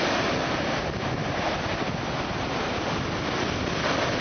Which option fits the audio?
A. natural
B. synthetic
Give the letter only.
A